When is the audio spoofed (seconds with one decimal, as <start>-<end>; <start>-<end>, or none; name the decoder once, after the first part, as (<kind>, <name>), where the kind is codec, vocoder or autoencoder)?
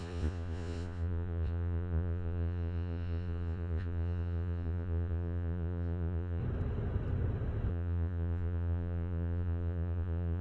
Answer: 0.0-6.4 (vocoder, Vocos); 7.7-10.4